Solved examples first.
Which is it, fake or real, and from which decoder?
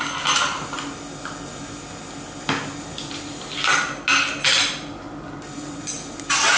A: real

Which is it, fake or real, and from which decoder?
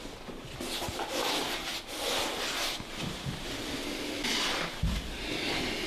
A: real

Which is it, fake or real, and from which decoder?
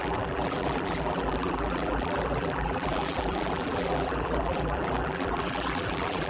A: fake, vocoder, BigVGAN v2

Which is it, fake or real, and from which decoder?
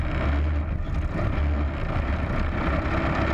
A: real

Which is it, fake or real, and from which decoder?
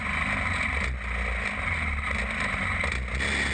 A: real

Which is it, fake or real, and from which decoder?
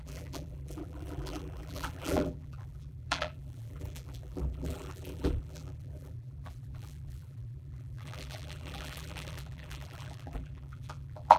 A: fake, vocoder, BigVGAN v2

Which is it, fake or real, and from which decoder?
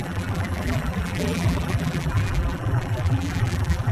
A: fake, vocoder, BigVGAN v2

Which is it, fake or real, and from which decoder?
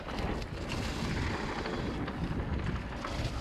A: real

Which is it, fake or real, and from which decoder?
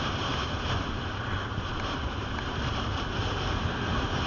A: fake, vocoder, BigVGAN v2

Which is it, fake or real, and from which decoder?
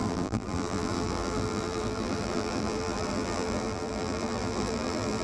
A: fake, vocoder, BigVGAN v2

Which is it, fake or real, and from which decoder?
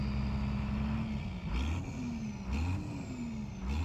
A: real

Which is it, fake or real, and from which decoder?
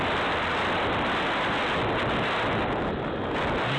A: real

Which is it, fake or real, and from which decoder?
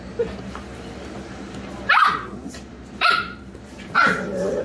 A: fake, vocoder, BigVGAN v2